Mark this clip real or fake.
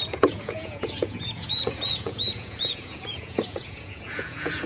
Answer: fake